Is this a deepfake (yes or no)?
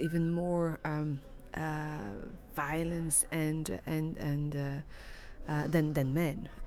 yes